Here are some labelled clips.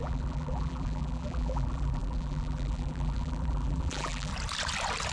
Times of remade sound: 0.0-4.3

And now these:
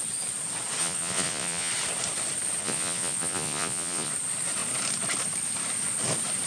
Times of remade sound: 0.8-1.7; 2.6-4.1